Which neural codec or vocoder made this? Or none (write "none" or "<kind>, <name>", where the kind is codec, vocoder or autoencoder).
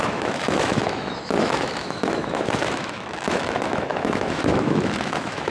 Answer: autoencoder, DAC-VAE